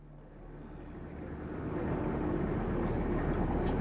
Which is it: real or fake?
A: real